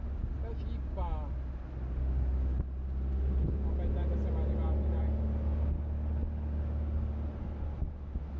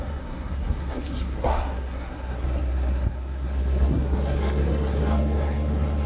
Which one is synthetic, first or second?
second